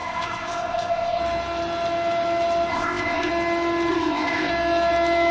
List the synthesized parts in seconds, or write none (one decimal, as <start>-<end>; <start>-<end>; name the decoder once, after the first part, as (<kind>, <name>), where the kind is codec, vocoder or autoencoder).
0.0-1.2 (codec, ZipCodec); 2.7-3.3; 3.9-4.5